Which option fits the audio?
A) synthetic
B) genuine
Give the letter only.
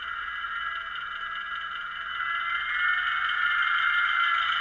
B